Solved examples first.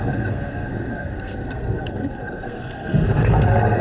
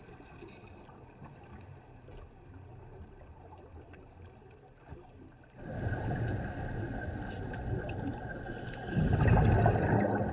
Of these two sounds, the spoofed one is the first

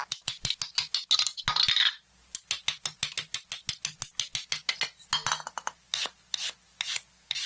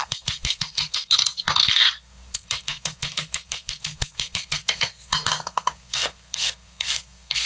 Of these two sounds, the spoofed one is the second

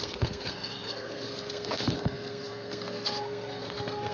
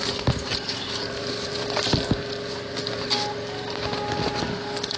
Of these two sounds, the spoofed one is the first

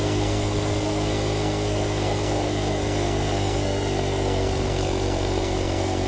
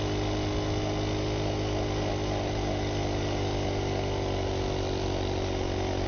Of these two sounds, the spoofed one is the first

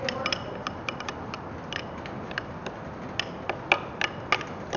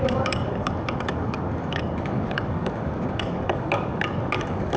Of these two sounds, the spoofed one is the second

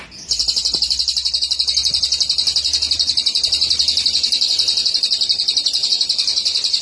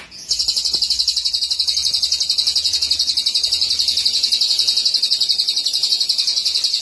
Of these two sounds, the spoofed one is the second